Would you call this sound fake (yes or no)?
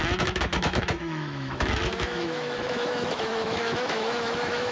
yes